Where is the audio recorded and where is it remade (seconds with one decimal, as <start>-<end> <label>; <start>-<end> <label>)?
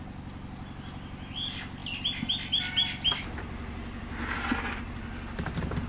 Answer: 0.0-5.9 recorded